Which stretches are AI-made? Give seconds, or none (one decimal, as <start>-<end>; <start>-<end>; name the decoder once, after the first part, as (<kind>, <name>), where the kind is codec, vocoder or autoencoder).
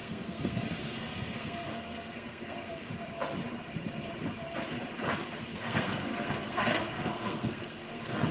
0.0-2.9 (codec, SNAC); 5.4-8.3